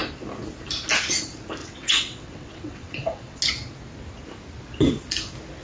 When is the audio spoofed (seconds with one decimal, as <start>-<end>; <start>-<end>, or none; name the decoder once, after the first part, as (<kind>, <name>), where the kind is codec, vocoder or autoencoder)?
1.6-3.4 (vocoder, WaveNeXt)